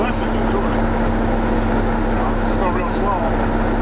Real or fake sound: real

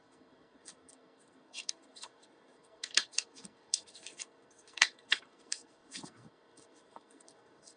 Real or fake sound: fake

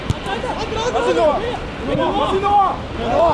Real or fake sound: real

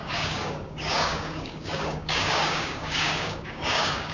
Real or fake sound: fake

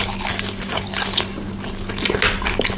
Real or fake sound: real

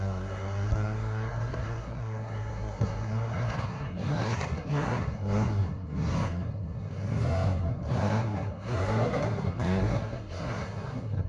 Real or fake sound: fake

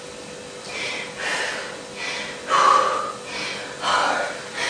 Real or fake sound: real